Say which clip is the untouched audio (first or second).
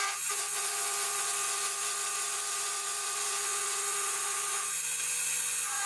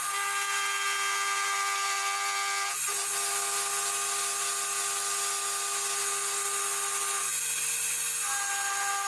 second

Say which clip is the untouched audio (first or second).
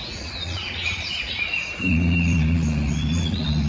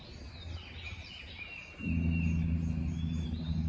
second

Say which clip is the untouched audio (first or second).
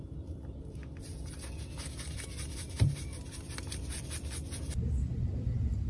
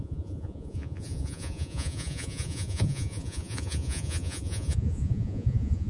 first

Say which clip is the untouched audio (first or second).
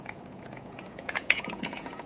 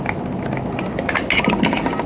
second